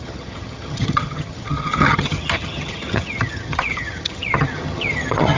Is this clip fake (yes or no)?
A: yes